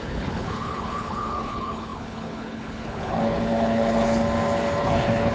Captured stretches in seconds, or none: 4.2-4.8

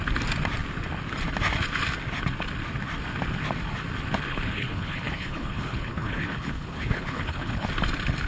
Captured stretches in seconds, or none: 0.0-4.3; 7.7-8.3

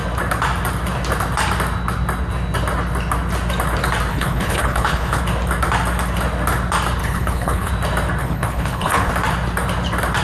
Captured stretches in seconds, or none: 0.0-4.1; 5.2-7.0; 7.7-8.2; 9.1-10.2

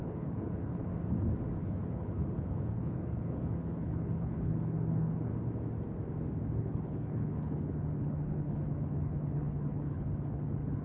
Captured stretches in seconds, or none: 0.9-1.6; 5.3-6.5

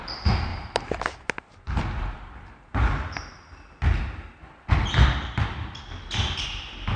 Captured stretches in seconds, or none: 0.0-7.0

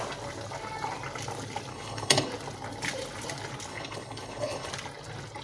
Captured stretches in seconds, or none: 0.0-1.7; 2.3-3.7; 4.7-5.4

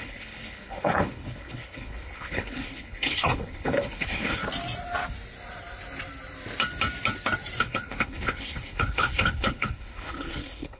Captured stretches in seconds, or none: 4.4-7.6